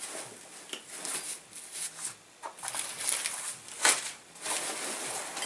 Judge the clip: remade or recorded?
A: recorded